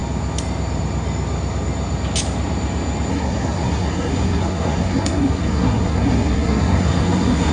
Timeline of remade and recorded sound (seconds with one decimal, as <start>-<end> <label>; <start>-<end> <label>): 0.0-3.1 recorded; 3.1-7.5 remade